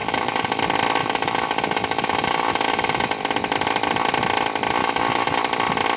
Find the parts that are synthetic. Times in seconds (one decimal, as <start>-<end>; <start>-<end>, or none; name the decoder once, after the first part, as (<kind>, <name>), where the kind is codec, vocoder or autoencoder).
0.0-0.6 (autoencoder, DAC-VAE); 1.0-3.2; 4.8-5.4